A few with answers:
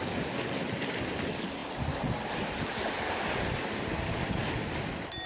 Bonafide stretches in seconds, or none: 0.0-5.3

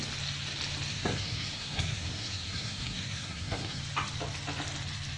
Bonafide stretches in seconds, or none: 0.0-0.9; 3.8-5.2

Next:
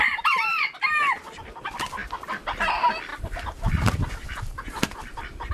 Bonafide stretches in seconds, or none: 0.0-3.1

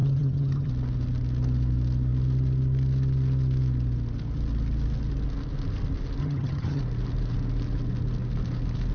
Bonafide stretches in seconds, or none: 0.7-6.2; 6.8-8.9

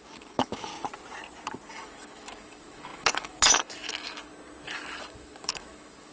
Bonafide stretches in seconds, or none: 0.7-1.7; 4.3-5.0